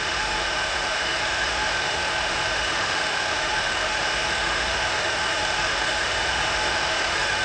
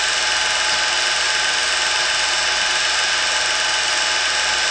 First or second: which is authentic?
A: second